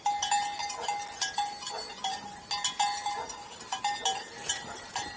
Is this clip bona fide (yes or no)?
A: yes